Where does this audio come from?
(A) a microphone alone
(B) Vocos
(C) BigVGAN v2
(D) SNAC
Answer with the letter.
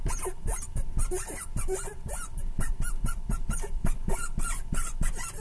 C